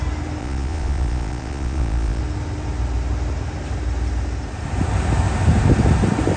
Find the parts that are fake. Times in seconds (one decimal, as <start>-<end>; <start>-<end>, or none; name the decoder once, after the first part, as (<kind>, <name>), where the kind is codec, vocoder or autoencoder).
0.4-2.2 (vocoder, Vocos)